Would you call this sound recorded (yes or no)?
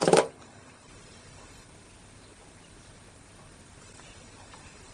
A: no